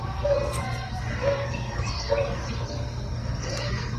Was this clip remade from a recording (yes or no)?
yes